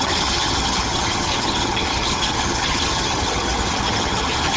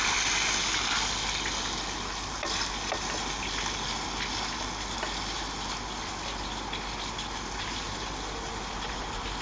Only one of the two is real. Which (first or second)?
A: second